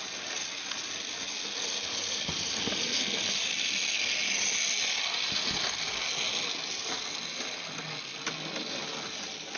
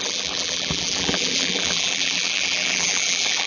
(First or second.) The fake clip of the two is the second